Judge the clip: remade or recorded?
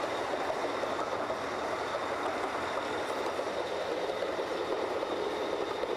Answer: remade